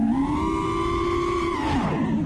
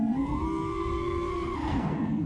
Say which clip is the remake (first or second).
second